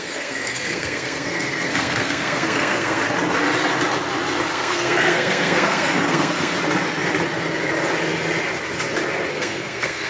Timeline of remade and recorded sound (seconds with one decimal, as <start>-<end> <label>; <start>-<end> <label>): 0.0-3.0 remade; 3.0-4.5 recorded; 4.5-6.5 remade; 6.5-9.3 recorded; 9.3-10.1 remade